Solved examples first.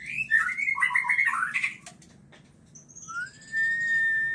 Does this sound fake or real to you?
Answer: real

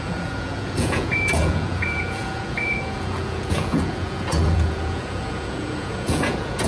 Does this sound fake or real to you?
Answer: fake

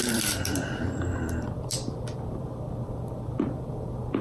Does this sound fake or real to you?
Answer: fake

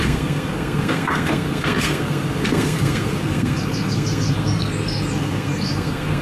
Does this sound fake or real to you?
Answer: fake